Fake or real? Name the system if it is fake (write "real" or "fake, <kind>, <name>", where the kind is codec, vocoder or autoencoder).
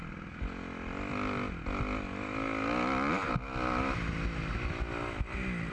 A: real